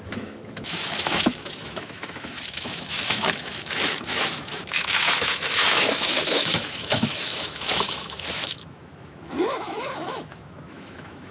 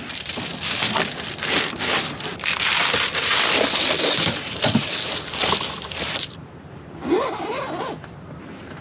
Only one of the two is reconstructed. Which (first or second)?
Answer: first